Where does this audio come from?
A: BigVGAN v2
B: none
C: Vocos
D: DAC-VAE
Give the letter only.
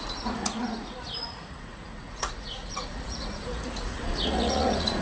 C